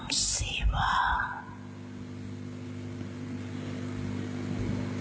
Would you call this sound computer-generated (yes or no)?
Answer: no